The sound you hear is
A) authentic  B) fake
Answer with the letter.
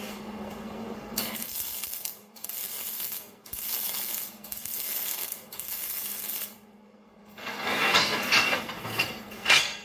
B